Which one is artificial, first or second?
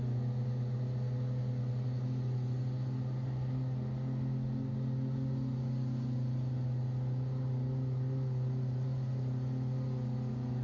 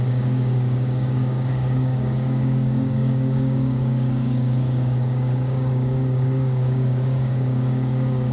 second